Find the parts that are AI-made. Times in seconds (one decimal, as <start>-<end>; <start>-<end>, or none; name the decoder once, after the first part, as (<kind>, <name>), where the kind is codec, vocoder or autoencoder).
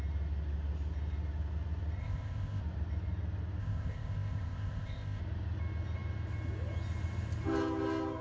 2.0-2.6 (codec, ZipCodec); 3.6-5.2